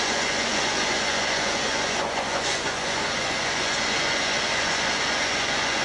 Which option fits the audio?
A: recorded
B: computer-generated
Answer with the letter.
B